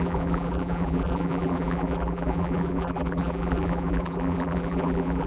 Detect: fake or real fake